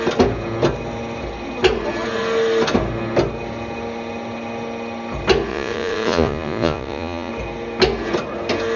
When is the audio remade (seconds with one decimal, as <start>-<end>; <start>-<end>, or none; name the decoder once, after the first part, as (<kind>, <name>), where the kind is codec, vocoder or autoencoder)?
5.5-7.3 (vocoder, Vocos)